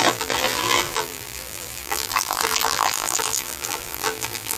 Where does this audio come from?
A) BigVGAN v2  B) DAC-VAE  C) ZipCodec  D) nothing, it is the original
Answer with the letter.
A